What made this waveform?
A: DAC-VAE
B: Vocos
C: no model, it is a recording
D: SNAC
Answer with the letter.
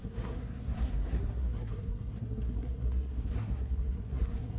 D